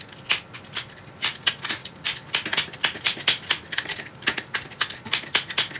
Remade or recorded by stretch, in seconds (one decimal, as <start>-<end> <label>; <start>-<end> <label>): 0.0-1.8 recorded; 1.8-5.0 remade; 5.0-5.8 recorded